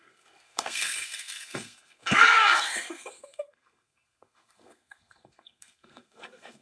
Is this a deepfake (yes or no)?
yes